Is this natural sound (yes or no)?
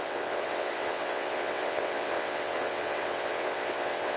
no